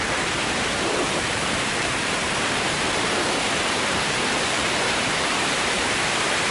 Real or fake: fake